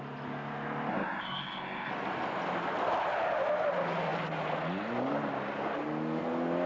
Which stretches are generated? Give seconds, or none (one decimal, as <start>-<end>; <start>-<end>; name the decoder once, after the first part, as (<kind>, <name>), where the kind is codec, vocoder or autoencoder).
0.9-1.9 (codec, SNAC)